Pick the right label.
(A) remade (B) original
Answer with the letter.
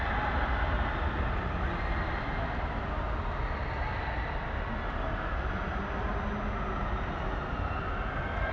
B